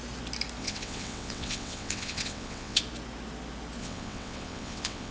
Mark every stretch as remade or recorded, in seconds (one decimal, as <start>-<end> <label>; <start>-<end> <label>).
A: 0.0-0.6 recorded; 0.6-2.8 remade; 2.8-3.8 recorded; 3.8-5.1 remade